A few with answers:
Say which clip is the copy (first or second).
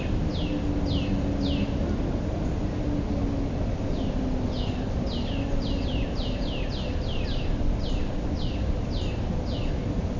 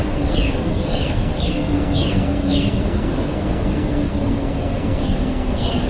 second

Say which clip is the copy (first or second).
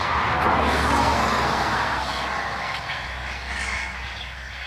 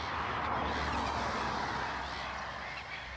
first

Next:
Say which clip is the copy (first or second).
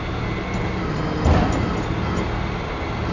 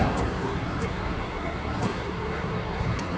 second